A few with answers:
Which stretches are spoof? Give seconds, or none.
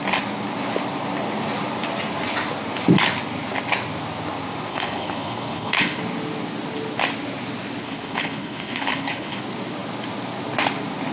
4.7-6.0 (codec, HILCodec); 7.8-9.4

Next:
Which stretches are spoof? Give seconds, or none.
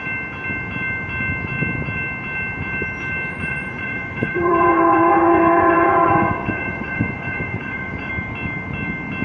3.3-8.1 (vocoder, Vocos)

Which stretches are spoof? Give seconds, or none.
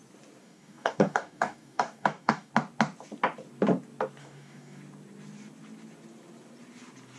0.4-2.5 (codec, DAC); 4.2-4.8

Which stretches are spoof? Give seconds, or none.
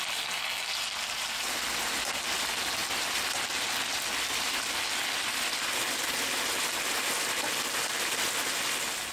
none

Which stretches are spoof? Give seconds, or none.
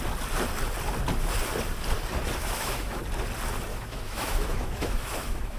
2.4-3.0 (autoencoder, DAC-VAE); 3.7-5.6